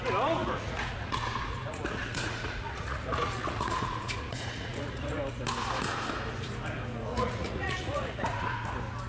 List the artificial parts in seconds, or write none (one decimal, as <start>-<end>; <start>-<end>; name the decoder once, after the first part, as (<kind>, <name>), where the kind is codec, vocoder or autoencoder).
0.4-5.2 (vocoder, Vocos); 7.1-8.7